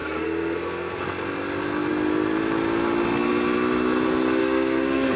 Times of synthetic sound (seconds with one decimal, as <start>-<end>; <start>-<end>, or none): 0.0-1.0; 4.4-5.2